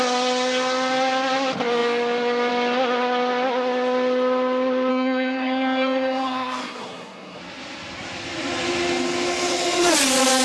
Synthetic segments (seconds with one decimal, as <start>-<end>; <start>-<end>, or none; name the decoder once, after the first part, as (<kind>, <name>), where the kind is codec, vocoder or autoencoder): 4.9-7.4 (codec, SNAC)